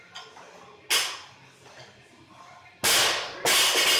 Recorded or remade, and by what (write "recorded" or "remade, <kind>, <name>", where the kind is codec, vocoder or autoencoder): recorded